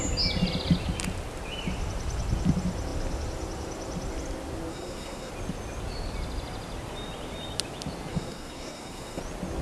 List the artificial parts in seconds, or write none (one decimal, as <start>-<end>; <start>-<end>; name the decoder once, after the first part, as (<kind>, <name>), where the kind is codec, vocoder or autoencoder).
4.7-5.3 (codec, SNAC); 8.1-9.2

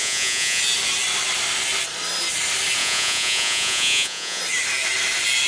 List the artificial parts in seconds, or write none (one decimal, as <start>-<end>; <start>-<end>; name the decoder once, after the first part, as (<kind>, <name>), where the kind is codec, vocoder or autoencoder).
0.0-0.6 (vocoder, Vocos); 2.8-4.4

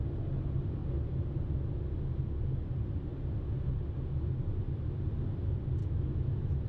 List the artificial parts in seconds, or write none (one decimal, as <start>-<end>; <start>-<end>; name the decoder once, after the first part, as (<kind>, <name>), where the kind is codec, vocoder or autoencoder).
5.8-6.7 (autoencoder, DAC-VAE)